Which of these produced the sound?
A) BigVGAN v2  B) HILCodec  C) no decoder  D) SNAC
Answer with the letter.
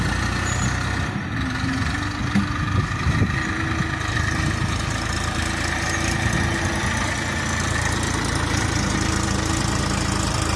C